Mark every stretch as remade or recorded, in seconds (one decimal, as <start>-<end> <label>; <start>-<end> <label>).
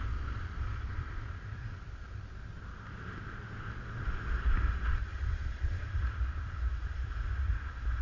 0.0-0.7 recorded; 0.7-2.3 remade; 2.3-5.1 recorded; 5.1-7.3 remade; 7.3-8.0 recorded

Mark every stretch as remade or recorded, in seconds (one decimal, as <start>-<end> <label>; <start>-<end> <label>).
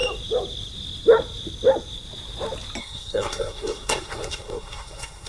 0.0-2.8 recorded; 2.8-5.3 remade